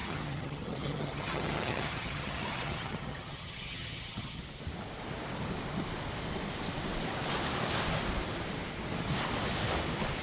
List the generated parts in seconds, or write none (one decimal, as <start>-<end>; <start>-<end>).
0.0-4.4